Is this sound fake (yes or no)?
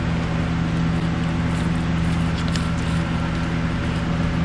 no